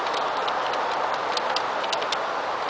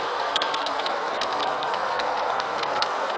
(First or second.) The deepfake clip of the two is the second